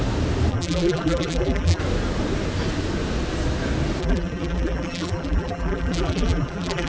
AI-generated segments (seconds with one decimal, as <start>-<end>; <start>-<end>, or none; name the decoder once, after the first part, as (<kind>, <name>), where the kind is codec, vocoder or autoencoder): 0.5-1.8 (vocoder, BigVGAN v2); 4.0-6.9